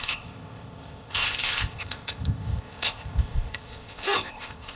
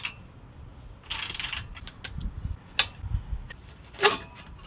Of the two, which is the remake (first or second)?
first